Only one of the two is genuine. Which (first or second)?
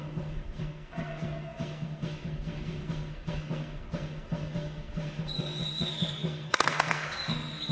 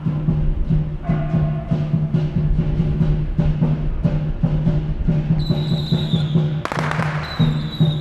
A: second